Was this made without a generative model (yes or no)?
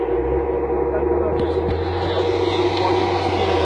yes